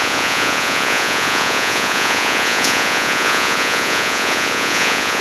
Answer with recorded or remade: remade